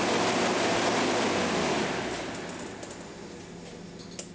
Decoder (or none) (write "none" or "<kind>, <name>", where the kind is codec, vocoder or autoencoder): none